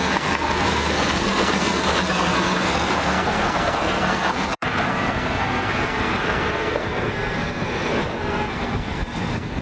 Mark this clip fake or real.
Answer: fake